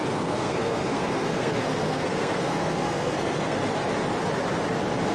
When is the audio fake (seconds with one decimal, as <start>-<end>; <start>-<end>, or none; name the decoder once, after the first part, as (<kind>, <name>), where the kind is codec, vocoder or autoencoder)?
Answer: 0.0-3.6 (codec, SNAC)